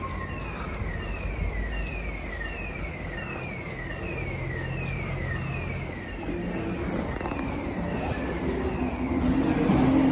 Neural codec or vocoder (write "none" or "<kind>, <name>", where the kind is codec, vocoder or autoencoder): none